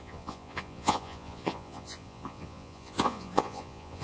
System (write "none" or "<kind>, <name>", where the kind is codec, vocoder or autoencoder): vocoder, Vocos